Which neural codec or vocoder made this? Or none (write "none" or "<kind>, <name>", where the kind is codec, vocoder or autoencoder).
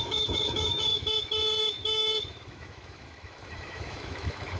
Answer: autoencoder, DAC-VAE